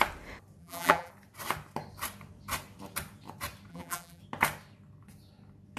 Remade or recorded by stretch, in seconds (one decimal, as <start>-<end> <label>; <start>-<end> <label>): 0.0-0.6 recorded; 0.6-1.1 remade; 1.1-3.7 recorded; 3.7-4.2 remade; 4.2-5.8 recorded